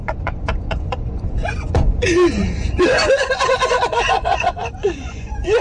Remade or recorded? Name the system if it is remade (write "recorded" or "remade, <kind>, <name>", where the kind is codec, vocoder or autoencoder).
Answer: remade, vocoder, Vocos